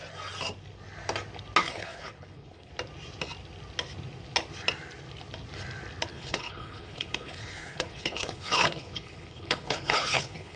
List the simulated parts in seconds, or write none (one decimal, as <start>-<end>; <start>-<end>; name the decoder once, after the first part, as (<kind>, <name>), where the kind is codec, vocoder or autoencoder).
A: 1.6-2.7 (codec, HILCodec); 6.1-10.6